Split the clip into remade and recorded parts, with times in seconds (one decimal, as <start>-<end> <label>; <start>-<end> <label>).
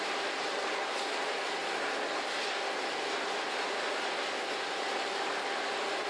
0.0-1.6 remade; 1.6-5.3 recorded; 5.3-6.1 remade